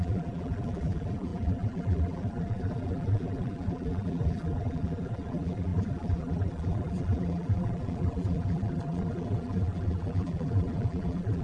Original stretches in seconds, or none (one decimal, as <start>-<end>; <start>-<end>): none